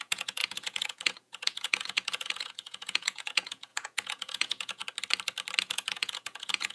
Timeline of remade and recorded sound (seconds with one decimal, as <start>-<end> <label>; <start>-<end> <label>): 0.0-4.8 remade; 4.8-5.6 recorded; 5.6-6.7 remade